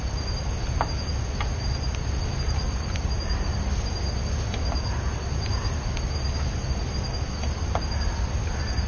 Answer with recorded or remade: recorded